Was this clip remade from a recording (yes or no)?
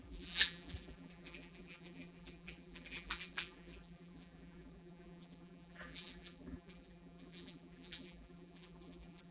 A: yes